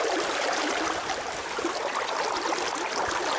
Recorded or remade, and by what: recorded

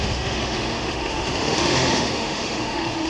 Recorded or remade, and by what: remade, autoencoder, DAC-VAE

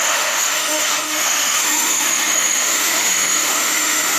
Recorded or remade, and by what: remade, autoencoder, DAC-VAE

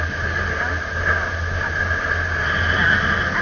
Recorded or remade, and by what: recorded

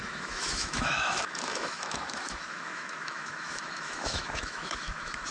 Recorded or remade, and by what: remade, autoencoder, DAC-VAE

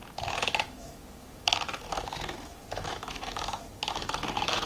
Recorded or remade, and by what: remade, autoencoder, DAC-VAE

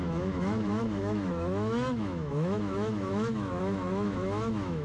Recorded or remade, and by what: remade, autoencoder, DAC-VAE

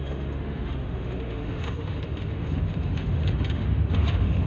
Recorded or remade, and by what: remade, autoencoder, DAC-VAE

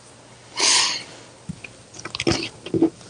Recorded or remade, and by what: recorded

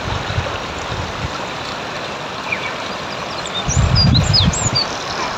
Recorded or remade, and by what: recorded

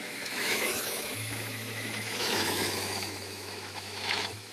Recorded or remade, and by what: remade, autoencoder, DAC-VAE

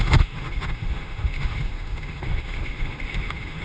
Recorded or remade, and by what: remade, autoencoder, DAC-VAE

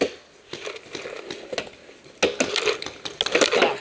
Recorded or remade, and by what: recorded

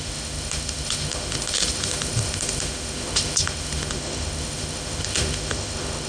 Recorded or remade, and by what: remade, autoencoder, DAC-VAE